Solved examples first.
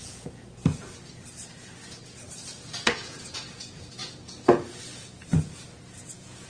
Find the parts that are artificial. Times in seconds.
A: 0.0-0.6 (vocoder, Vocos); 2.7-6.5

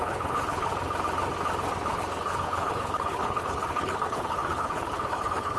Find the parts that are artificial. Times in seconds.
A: 0.0-0.7 (codec, HILCodec); 1.9-5.6

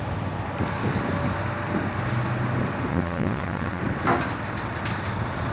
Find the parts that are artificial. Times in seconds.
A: 2.9-3.8 (vocoder, Vocos)

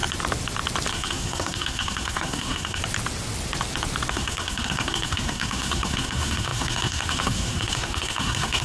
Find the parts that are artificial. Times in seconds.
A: 0.9-2.8 (codec, SNAC); 4.1-8.6

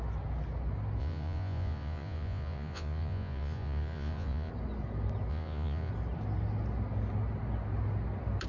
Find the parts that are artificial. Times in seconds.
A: 1.0-4.5 (vocoder, Vocos); 5.3-5.9

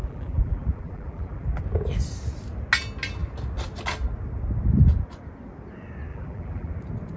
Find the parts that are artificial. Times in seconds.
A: 0.0-1.6 (vocoder, BigVGAN v2); 6.1-6.7

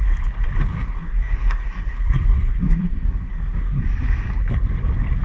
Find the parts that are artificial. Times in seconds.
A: 0.7-3.8 (codec, SNAC)

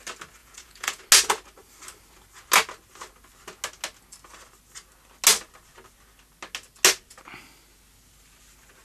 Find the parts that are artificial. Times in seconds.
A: 0.4-1.0 (vocoder, Vocos)